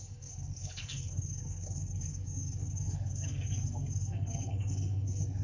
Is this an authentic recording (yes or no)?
no